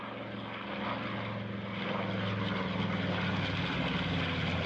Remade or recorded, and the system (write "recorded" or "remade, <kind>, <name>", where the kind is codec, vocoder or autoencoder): recorded